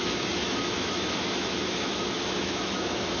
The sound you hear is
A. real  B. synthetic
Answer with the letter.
B